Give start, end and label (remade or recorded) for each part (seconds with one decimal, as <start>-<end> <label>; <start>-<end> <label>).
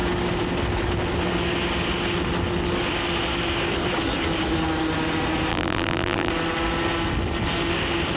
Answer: 0.0-5.5 recorded; 5.5-6.3 remade; 6.3-8.2 recorded